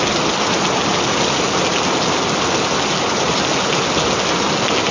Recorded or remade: recorded